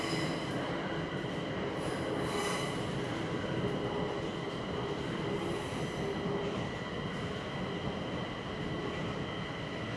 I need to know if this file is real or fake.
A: real